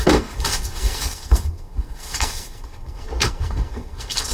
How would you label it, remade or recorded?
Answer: remade